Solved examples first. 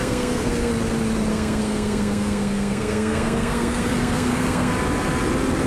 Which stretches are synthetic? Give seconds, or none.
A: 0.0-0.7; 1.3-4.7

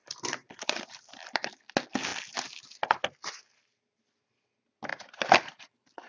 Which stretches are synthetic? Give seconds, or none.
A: 0.0-1.7; 4.9-6.1

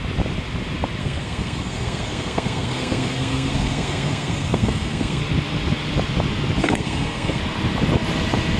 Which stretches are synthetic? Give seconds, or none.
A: 1.0-5.2; 6.6-7.4

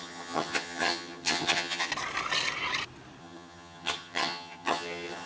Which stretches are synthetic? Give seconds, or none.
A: 0.0-1.9; 3.2-5.3

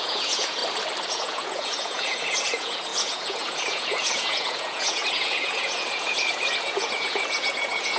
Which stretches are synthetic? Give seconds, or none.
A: 0.0-0.6; 1.1-8.0

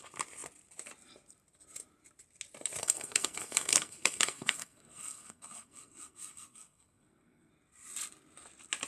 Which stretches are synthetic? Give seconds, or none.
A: 2.8-7.5

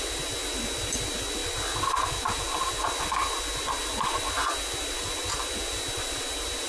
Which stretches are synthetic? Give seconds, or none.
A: none